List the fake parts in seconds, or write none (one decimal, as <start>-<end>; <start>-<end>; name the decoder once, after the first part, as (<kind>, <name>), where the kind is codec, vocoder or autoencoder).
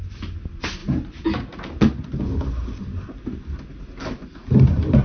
none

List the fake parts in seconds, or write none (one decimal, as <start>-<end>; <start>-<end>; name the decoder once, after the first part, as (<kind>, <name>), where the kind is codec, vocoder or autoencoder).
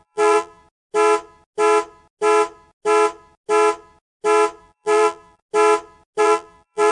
0.0-0.6 (vocoder, BigVGAN v2); 4.6-5.4; 6.2-6.9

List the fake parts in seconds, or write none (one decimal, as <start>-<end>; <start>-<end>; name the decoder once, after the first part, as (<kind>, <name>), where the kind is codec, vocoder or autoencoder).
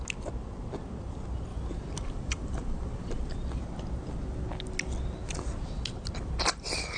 1.5-3.2 (vocoder, BigVGAN v2)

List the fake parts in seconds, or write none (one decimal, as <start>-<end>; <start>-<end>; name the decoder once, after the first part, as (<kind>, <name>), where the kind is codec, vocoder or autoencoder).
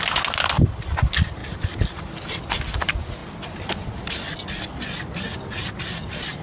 1.4-2.0 (vocoder, BigVGAN v2)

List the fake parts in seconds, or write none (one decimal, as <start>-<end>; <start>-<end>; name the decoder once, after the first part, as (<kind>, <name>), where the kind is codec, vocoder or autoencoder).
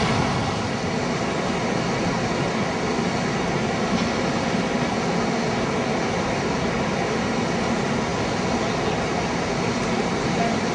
none